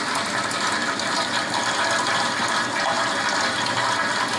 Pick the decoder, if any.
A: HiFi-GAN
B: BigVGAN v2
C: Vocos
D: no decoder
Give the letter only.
D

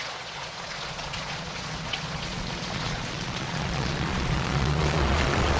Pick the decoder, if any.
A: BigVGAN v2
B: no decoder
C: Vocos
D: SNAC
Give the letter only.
C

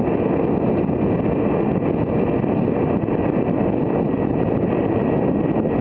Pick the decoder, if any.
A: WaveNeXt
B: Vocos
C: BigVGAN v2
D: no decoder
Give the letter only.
D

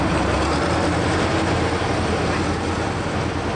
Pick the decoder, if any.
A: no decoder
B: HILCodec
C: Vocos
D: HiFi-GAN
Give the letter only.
A